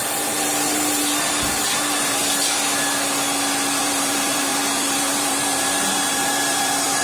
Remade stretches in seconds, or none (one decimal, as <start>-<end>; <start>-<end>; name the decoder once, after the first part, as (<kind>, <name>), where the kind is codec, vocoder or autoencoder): 0.0-2.2 (vocoder, BigVGAN v2); 3.8-7.0